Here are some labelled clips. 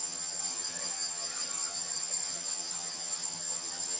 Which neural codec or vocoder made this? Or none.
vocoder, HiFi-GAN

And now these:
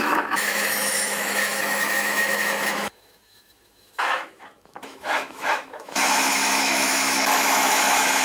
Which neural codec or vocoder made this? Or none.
autoencoder, DAC-VAE